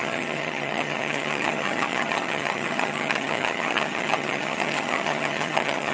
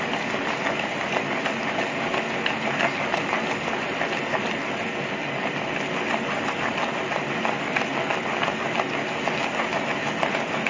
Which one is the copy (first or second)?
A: first